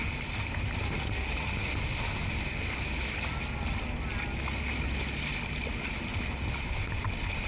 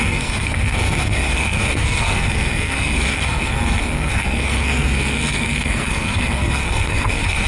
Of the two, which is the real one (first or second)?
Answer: first